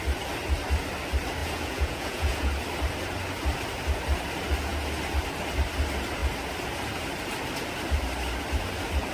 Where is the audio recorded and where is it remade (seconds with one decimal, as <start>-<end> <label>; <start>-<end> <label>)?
0.0-1.4 recorded; 1.4-2.5 remade; 2.5-9.1 recorded